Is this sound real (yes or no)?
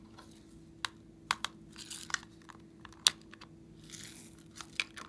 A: yes